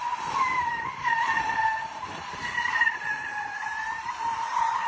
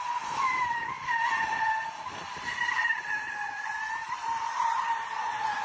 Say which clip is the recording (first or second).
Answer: second